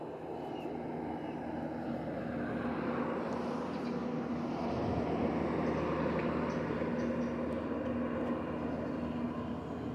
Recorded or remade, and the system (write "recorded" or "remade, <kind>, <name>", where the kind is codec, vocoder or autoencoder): recorded